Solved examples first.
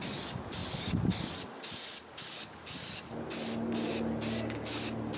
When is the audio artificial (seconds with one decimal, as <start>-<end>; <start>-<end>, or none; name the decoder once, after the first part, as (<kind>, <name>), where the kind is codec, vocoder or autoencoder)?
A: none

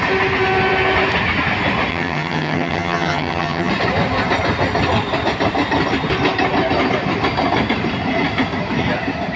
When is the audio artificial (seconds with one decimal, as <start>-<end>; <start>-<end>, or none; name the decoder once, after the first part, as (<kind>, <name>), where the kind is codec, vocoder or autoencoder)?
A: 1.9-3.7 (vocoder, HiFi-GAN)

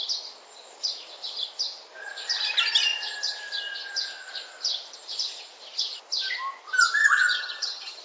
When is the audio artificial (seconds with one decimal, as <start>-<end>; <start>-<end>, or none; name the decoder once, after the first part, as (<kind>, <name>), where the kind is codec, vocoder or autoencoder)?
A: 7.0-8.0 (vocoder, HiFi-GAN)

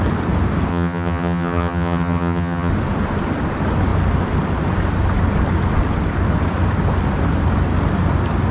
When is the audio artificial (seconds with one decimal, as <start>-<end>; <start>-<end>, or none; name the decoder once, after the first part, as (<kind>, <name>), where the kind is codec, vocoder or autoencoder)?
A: 0.7-2.7 (vocoder, HiFi-GAN)

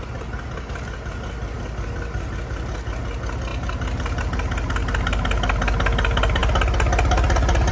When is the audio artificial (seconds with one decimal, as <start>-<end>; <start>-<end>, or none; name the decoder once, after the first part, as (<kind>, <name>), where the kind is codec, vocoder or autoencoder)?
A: none

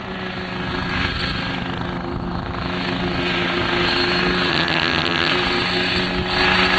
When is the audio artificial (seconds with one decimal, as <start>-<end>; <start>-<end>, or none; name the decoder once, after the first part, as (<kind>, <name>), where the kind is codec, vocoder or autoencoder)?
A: 4.5-5.3 (vocoder, HiFi-GAN)